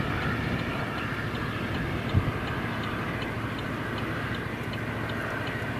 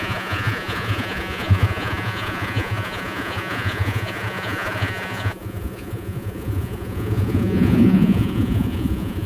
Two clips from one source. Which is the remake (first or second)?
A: second